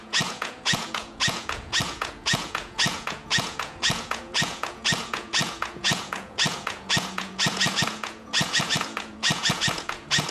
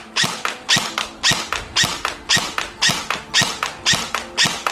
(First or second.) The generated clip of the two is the first